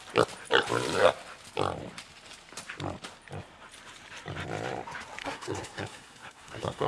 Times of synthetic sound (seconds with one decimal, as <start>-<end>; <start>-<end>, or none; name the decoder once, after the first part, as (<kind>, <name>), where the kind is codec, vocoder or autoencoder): 5.2-6.9 (codec, SNAC)